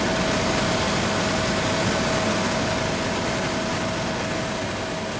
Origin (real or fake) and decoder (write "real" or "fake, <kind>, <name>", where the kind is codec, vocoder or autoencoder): real